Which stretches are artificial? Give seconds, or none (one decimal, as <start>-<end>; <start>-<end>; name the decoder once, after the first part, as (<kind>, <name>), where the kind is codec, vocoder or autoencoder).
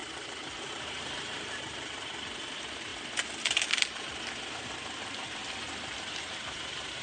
0.0-2.9 (vocoder, BigVGAN v2); 4.5-5.4; 6.0-7.0